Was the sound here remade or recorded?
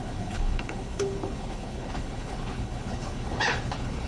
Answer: remade